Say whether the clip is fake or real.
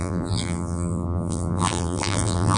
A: fake